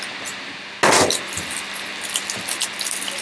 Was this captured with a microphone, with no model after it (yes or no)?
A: yes